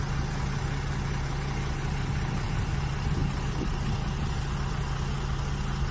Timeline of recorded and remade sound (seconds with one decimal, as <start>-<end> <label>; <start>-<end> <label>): 0.0-5.9 recorded

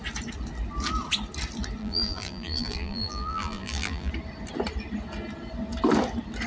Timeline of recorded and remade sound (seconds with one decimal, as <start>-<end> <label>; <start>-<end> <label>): 0.0-1.8 recorded; 1.8-4.1 remade; 4.1-6.5 recorded

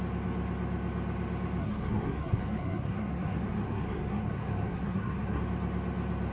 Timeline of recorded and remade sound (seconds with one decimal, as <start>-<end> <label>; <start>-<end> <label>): 0.0-1.6 recorded; 1.6-5.4 remade; 5.4-6.3 recorded

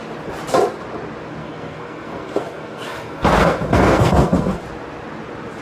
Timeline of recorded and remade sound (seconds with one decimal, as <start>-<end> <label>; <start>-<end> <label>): 0.0-1.4 recorded; 1.4-4.6 remade; 4.6-5.6 recorded

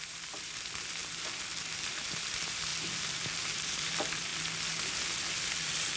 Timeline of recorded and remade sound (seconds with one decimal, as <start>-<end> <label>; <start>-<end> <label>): 0.0-1.0 remade; 1.0-2.1 recorded; 2.1-2.7 remade; 2.7-3.4 recorded; 3.4-4.3 remade; 4.3-5.4 recorded; 5.4-6.0 remade

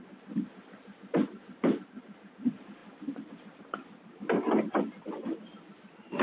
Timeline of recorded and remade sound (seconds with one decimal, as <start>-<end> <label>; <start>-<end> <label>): 0.0-6.2 recorded

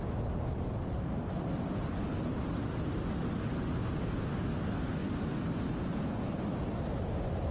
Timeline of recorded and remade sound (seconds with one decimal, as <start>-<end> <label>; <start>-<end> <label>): 0.0-7.5 recorded